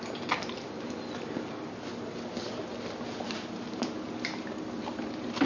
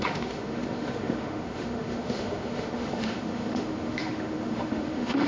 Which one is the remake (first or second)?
second